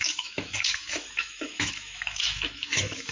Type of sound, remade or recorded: remade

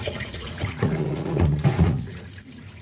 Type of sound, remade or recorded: remade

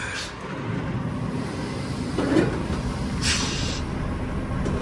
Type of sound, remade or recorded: recorded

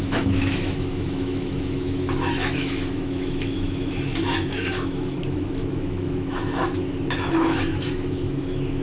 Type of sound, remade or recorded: remade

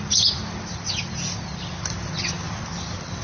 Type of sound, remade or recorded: recorded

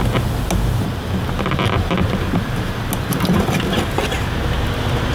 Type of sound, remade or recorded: recorded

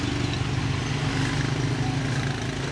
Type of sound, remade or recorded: recorded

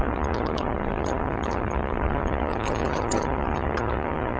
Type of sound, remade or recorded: remade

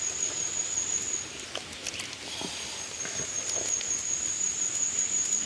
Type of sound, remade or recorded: recorded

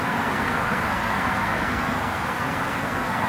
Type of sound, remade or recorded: remade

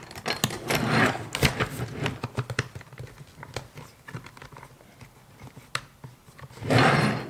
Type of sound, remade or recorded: recorded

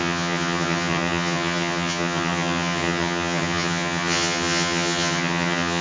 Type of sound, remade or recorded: remade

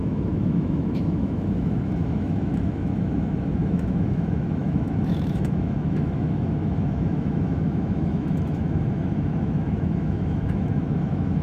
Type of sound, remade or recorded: remade